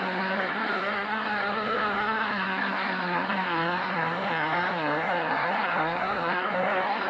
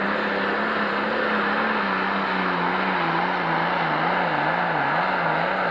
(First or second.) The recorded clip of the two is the second